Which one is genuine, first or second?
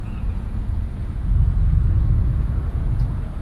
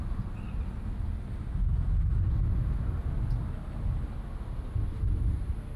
second